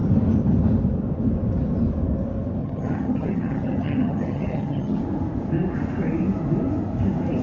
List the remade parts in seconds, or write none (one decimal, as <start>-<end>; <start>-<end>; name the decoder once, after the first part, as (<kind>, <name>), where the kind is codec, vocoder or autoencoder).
2.6-5.0 (vocoder, HiFi-GAN)